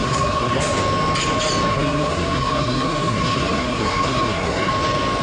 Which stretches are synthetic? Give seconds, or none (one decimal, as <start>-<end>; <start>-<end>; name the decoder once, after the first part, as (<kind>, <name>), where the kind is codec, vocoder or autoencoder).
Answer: 0.0-0.6 (codec, SNAC); 1.7-4.7